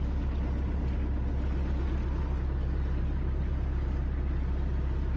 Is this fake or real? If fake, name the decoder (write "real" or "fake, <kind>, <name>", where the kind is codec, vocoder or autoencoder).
real